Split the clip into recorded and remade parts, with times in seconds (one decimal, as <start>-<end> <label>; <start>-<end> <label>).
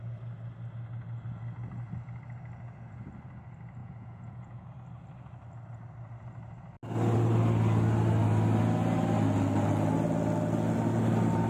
0.0-3.8 recorded; 3.8-4.7 remade; 4.7-11.5 recorded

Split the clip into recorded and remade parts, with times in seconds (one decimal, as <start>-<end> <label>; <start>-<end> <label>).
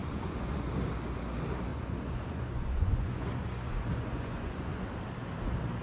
0.0-0.7 remade; 0.7-1.7 recorded; 1.7-4.9 remade; 4.9-5.8 recorded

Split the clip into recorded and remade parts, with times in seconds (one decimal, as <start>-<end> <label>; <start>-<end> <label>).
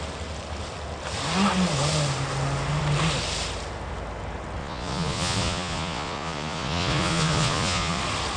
0.0-4.6 recorded; 4.6-8.0 remade; 8.0-8.4 recorded